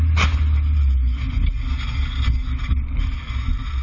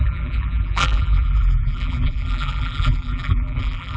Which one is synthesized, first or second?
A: second